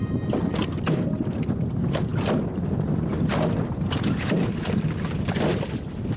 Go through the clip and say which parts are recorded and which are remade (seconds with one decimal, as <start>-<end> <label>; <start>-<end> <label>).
0.0-6.2 recorded